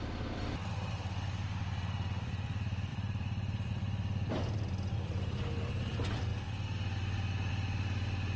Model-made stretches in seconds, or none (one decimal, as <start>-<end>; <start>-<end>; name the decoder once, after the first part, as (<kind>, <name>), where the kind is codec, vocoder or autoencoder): 0.0-6.3 (vocoder, BigVGAN v2); 7.5-8.4